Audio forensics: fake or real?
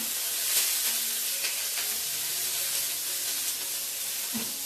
real